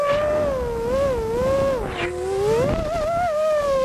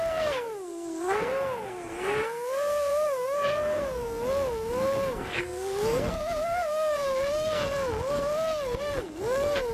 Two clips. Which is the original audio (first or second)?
first